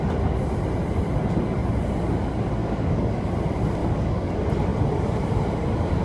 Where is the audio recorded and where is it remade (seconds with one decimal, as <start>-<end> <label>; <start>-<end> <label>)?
0.0-2.6 recorded; 2.6-3.3 remade; 3.3-3.8 recorded; 3.8-4.3 remade; 4.3-6.0 recorded